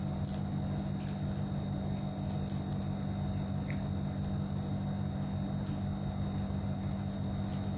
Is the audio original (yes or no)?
yes